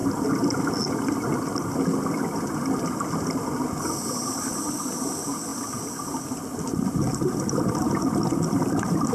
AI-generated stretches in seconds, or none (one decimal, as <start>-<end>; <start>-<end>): none